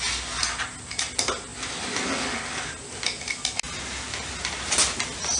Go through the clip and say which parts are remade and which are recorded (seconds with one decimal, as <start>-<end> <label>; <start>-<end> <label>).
0.0-5.4 recorded